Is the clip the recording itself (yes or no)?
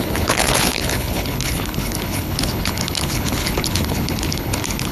no